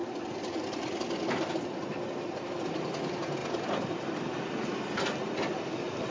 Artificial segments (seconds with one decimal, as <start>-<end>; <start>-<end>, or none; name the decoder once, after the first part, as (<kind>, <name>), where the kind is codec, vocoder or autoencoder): 0.0-1.9 (vocoder, BigVGAN v2); 3.4-5.2